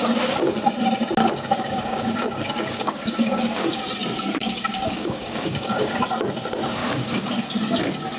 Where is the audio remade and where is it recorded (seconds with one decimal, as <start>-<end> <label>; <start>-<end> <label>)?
0.0-1.2 recorded; 1.2-3.8 remade; 3.8-4.4 recorded; 4.4-6.0 remade; 6.0-6.8 recorded; 6.8-7.3 remade; 7.3-8.2 recorded